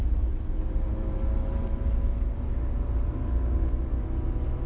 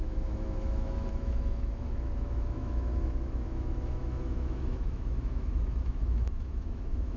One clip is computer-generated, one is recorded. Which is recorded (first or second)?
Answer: first